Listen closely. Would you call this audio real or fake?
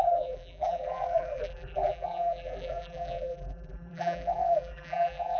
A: fake